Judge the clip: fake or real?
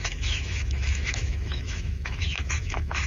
fake